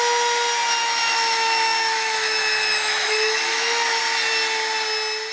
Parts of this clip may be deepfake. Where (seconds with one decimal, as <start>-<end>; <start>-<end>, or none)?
0.8-4.0